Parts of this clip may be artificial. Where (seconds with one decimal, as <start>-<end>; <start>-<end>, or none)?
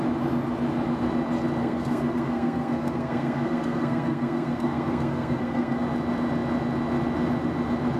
1.6-5.8